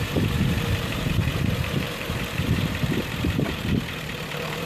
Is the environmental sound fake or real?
fake